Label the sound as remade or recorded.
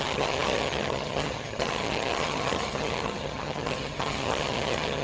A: remade